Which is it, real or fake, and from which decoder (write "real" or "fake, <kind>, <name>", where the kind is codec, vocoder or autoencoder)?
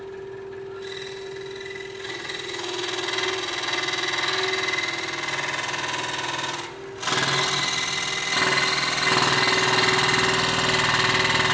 real